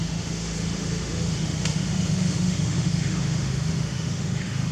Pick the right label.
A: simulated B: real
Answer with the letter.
A